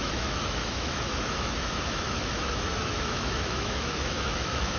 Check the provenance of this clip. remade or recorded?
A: remade